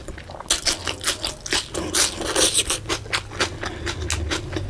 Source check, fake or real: real